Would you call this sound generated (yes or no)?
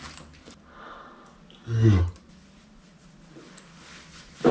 no